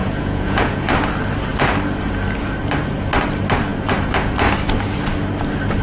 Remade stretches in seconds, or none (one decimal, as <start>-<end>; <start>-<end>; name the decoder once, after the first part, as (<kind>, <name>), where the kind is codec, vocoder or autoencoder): 0.0-0.9 (vocoder, Vocos)